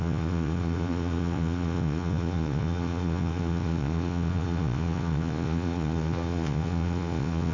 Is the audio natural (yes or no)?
no